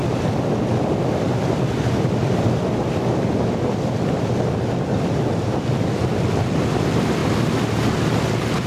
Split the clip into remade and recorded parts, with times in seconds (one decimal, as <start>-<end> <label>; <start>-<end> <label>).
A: 0.0-7.2 remade; 7.2-7.9 recorded; 7.9-8.7 remade